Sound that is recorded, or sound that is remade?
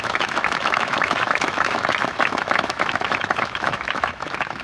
remade